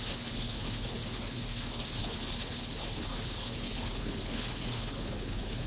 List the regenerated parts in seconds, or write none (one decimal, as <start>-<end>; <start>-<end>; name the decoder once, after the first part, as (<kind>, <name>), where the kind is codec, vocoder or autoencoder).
0.0-5.7 (codec, HILCodec)